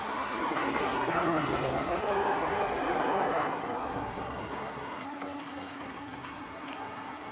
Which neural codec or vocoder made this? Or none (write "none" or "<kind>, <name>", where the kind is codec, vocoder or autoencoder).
codec, SNAC